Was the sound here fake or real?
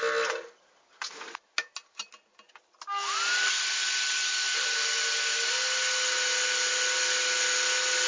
real